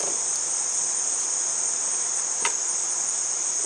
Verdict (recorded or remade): recorded